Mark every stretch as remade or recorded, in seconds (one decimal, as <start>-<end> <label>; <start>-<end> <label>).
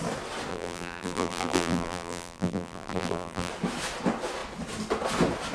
0.0-0.5 recorded; 0.5-3.5 remade; 3.5-5.5 recorded